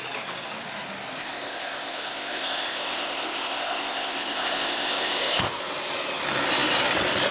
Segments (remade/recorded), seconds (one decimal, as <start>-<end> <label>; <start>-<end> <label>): 0.0-1.2 recorded; 1.2-5.6 remade; 5.6-7.3 recorded